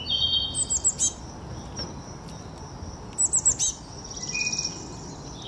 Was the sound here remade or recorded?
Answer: recorded